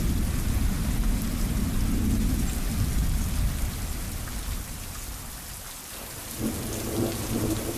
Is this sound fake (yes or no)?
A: no